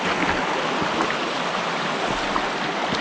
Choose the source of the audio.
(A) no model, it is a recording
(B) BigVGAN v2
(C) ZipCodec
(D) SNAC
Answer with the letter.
A